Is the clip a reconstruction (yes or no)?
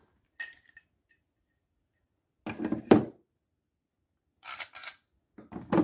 no